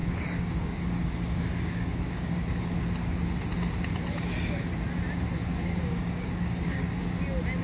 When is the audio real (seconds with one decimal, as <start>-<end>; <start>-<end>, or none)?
2.6-5.4; 7.0-7.6